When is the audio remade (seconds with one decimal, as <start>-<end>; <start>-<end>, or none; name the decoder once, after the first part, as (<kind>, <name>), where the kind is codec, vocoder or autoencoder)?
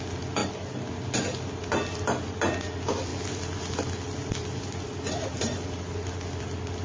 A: 0.4-0.9 (vocoder, BigVGAN v2); 3.1-5.9